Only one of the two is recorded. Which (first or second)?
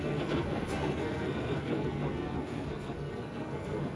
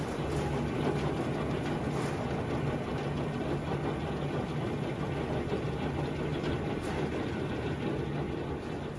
second